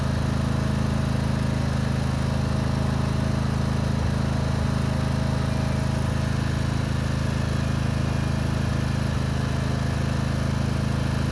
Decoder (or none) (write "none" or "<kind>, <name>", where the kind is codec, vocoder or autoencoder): none